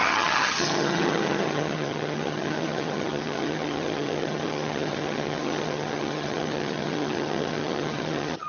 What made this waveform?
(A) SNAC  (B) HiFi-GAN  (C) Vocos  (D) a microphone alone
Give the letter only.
B